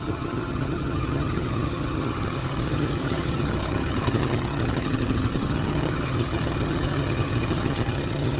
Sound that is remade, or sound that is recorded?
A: remade